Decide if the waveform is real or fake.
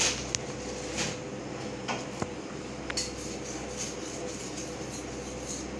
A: real